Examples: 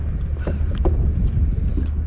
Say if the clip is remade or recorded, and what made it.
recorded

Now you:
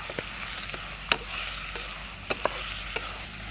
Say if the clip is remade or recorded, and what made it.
recorded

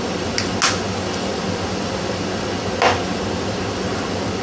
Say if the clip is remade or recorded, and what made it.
recorded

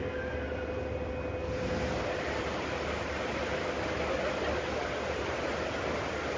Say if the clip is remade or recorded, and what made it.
recorded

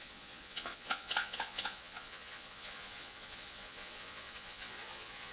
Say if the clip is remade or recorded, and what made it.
remade, vocoder, Vocos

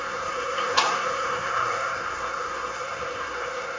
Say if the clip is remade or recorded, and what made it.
remade, codec, SNAC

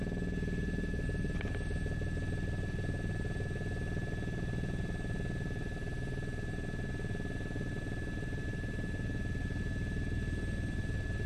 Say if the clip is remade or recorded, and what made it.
recorded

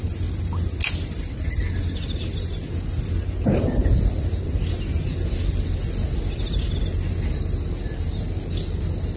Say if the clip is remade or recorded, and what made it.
recorded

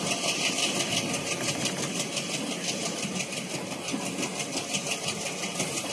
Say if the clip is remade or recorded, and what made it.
recorded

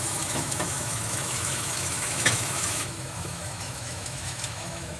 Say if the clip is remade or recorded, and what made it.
remade, autoencoder, DAC-VAE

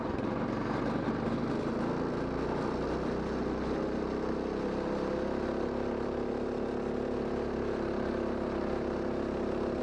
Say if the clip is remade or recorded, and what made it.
recorded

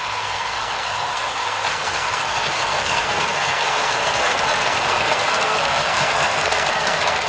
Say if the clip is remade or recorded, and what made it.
remade, codec, SNAC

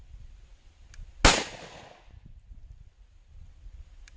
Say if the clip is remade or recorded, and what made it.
recorded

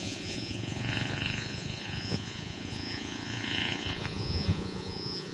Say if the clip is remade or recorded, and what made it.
remade, vocoder, Vocos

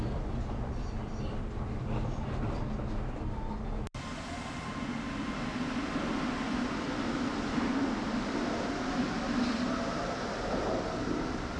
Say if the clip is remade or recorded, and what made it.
recorded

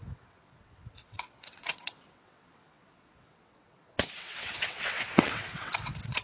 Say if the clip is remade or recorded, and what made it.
remade, vocoder, WaveNeXt